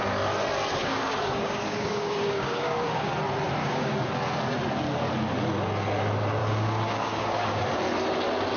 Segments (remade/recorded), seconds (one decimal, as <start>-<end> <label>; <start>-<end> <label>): 0.0-0.8 recorded; 0.8-3.1 remade; 3.1-3.6 recorded; 3.6-4.1 remade; 4.1-6.4 recorded; 6.4-7.6 remade; 7.6-8.6 recorded